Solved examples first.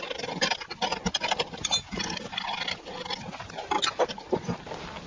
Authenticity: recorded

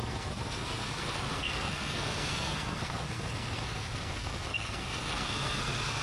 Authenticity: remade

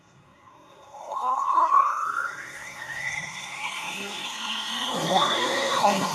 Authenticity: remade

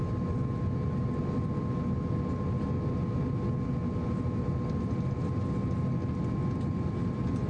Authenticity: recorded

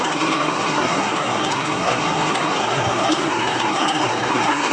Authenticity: remade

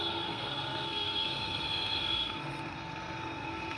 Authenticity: remade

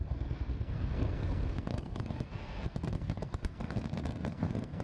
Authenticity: remade